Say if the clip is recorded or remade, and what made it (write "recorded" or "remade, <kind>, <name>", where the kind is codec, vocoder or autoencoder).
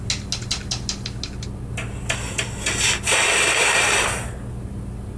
recorded